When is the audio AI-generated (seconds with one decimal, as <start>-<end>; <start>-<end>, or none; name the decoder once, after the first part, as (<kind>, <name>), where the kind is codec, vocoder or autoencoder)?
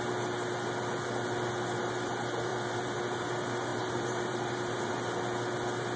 2.5-3.0 (vocoder, BigVGAN v2); 3.7-4.9